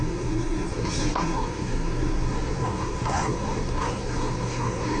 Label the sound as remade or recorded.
remade